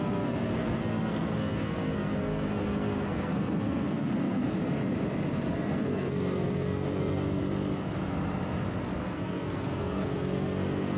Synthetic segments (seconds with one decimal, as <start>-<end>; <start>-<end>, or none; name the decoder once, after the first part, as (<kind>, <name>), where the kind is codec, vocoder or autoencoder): 0.0-4.4 (codec, SNAC); 5.5-7.4; 9.0-11.0